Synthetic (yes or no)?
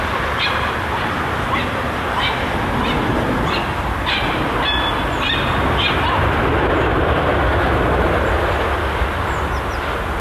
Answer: no